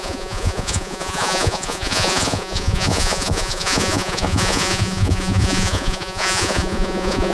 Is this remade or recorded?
remade